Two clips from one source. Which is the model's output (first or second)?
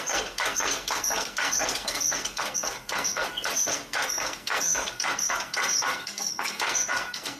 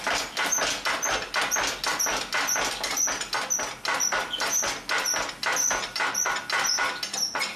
first